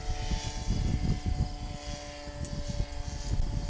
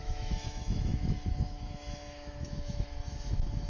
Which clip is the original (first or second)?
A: first